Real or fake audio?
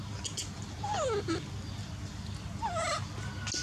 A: real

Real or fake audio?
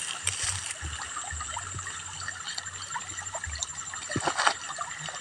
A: real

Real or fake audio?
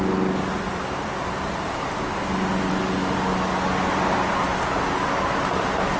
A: real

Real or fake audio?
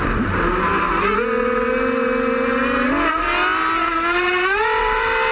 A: real